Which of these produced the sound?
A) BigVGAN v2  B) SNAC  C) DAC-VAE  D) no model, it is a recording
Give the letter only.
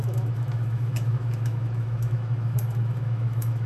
C